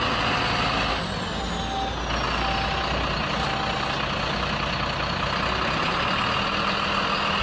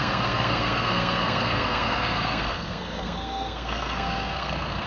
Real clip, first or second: first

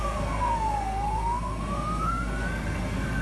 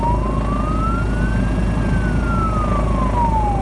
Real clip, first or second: second